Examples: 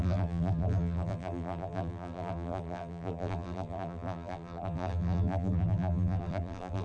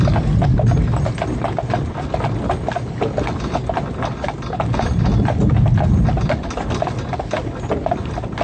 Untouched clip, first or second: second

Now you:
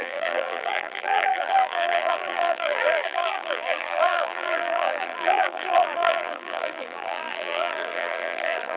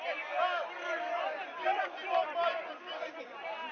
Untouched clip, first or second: second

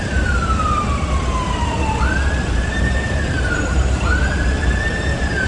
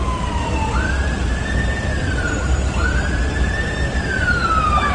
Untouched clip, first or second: second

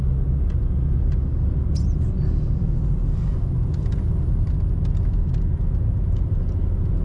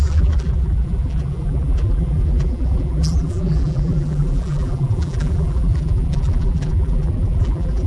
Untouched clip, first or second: first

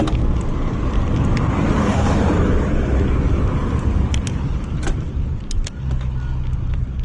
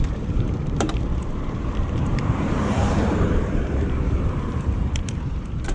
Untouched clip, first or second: first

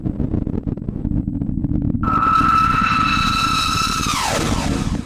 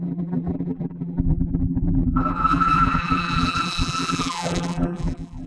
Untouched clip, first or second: first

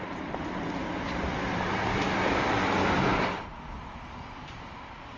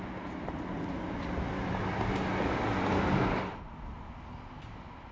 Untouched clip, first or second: second